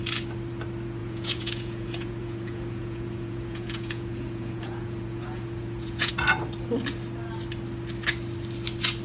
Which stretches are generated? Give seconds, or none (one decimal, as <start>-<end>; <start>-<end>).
1.0-6.1